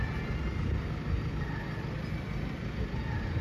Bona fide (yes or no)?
yes